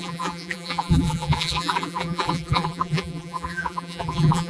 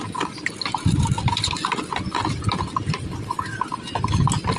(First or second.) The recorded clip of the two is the second